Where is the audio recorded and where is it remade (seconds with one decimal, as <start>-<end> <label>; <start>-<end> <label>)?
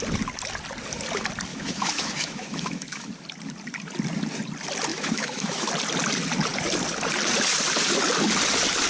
0.0-1.5 recorded; 1.5-3.1 remade; 3.1-4.9 recorded; 4.9-5.7 remade; 5.7-8.9 recorded